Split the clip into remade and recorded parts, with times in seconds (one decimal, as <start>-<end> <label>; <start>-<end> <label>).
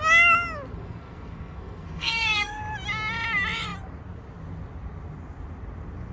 0.0-0.7 recorded; 0.7-2.6 remade; 2.6-6.1 recorded